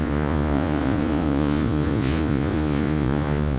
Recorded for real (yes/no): no